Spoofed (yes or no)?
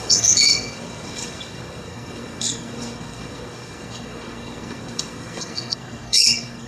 yes